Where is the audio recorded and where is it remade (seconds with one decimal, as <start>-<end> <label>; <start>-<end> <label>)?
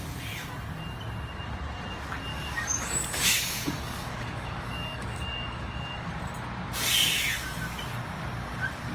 0.0-2.3 recorded; 2.3-6.1 remade; 6.1-8.9 recorded